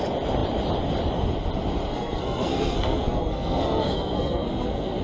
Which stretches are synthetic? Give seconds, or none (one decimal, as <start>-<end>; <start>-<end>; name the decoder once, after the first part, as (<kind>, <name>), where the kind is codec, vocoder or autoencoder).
1.9-5.0 (codec, SNAC)